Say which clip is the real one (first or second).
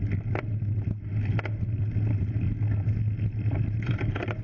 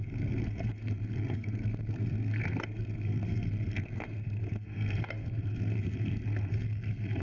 first